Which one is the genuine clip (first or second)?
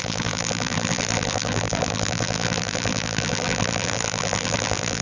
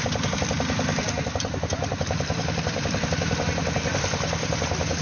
second